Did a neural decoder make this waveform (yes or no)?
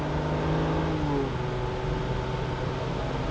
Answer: no